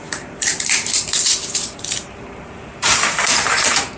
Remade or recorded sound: remade